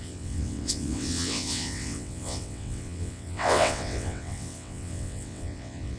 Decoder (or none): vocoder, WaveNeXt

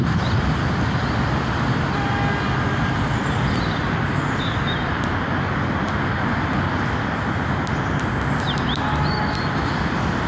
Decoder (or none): none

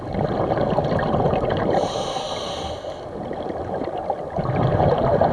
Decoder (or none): none